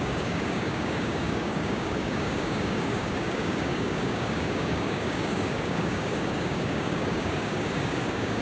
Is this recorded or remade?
remade